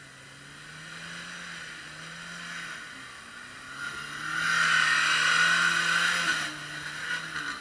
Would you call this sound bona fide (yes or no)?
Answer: yes